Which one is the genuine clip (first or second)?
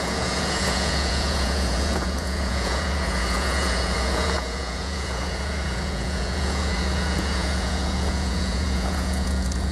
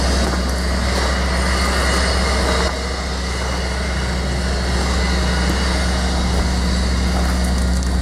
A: second